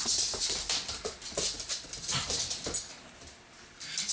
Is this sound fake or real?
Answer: real